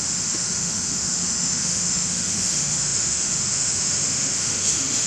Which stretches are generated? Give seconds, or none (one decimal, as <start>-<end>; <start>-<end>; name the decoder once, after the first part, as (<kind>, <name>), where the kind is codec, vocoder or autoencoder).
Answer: 0.0-5.1 (autoencoder, DAC-VAE)

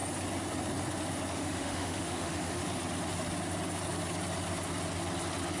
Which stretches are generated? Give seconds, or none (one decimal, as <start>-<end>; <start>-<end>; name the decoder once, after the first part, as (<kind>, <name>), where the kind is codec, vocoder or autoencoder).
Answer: 1.3-2.6 (autoencoder, DAC-VAE)

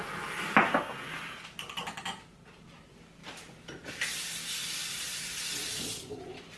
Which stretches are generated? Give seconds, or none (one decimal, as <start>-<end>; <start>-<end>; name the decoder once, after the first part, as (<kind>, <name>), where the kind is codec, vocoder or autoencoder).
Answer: none